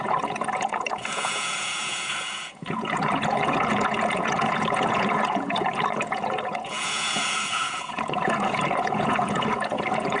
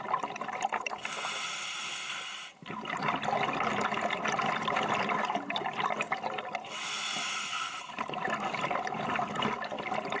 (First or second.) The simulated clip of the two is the first